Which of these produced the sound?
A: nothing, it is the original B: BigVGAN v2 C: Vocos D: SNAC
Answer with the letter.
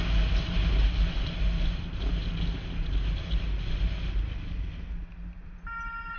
A